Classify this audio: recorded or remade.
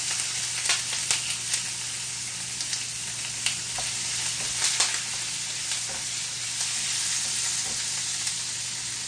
recorded